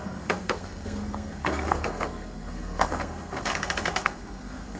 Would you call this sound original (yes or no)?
no